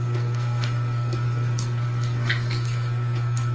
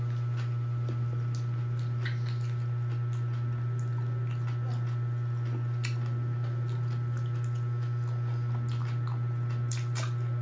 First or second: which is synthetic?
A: first